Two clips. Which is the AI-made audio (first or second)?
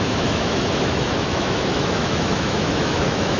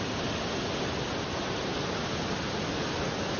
first